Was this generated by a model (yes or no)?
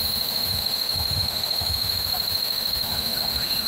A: yes